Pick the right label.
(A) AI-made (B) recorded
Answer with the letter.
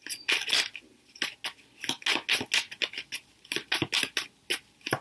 B